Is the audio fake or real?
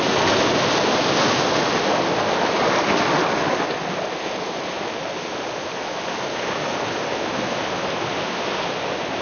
real